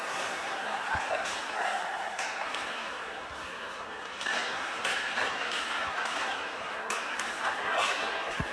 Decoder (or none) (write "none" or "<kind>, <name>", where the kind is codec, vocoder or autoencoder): codec, SNAC